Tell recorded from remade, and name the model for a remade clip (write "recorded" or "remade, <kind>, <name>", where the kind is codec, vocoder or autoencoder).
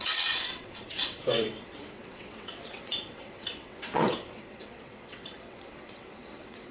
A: remade, vocoder, WaveNeXt